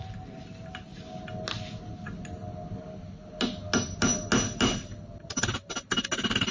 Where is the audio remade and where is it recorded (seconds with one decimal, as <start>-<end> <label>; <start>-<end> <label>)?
0.0-6.5 recorded